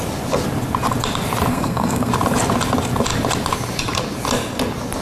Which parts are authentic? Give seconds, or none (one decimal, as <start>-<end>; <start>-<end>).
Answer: 0.0-1.5; 2.1-5.0